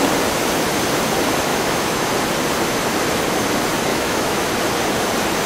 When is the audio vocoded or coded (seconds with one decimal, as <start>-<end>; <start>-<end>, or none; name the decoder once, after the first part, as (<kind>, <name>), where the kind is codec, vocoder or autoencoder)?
1.5-2.1 (autoencoder, DAC-VAE); 3.9-4.5